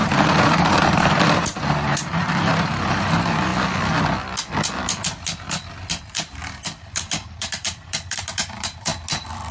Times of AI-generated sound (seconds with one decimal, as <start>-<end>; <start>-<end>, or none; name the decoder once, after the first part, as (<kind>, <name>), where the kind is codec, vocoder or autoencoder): 0.0-3.5 (vocoder, BigVGAN v2); 6.0-6.4; 7.0-8.9